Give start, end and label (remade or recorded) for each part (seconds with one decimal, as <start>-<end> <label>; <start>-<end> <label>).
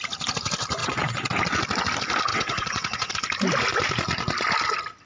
0.0-0.8 recorded; 0.8-1.3 remade; 1.3-2.3 recorded; 2.3-3.1 remade; 3.1-5.1 recorded